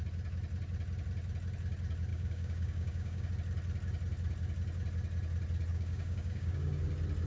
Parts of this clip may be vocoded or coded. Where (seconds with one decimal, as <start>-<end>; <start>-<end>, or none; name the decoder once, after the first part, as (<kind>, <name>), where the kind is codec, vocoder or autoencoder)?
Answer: 2.1-3.3 (codec, DAC); 5.7-6.8